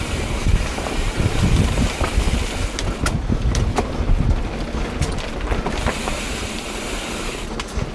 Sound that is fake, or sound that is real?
real